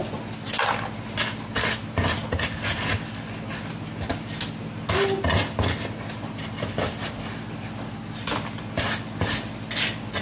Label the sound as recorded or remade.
recorded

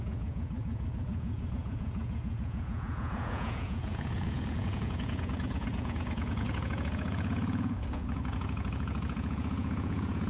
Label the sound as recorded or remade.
remade